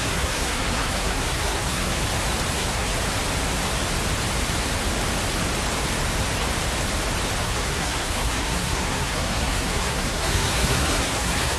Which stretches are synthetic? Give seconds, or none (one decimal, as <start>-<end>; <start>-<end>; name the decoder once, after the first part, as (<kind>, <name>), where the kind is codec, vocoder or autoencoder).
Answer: 0.0-2.0 (codec, SNAC); 2.5-2.9; 7.4-11.6